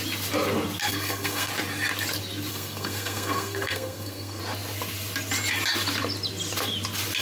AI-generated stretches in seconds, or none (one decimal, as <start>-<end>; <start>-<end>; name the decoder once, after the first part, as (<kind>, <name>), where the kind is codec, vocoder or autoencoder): 0.8-1.5 (codec, SNAC); 2.5-4.4